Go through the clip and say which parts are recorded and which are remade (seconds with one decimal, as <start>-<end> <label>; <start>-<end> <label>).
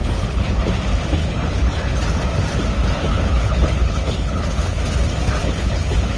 0.0-0.6 remade; 0.6-1.2 recorded; 1.2-1.9 remade; 1.9-3.1 recorded; 3.1-4.8 remade; 4.8-5.4 recorded; 5.4-6.2 remade